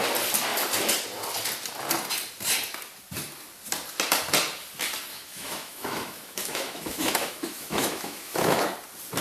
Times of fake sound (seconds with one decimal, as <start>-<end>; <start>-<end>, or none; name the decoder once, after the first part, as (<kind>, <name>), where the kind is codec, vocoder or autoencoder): 5.1-8.6 (autoencoder, DAC-VAE)